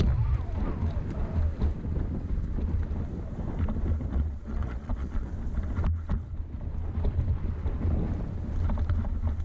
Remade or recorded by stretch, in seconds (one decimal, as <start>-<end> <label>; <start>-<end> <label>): 0.0-4.1 recorded; 4.1-5.3 remade; 5.3-9.4 recorded